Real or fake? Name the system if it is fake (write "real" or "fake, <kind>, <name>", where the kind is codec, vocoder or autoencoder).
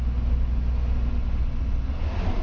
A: real